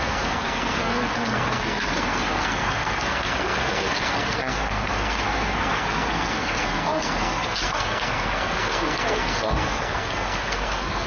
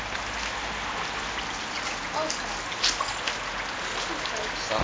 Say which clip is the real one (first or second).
second